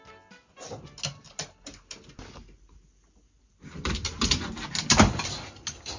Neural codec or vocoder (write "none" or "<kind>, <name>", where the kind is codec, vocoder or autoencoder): none